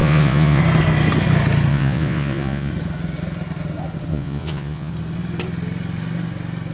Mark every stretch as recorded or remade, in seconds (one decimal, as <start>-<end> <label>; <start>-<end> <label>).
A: 0.0-0.6 remade; 0.6-1.7 recorded; 1.7-2.7 remade; 2.7-4.1 recorded; 4.1-4.9 remade; 4.9-6.7 recorded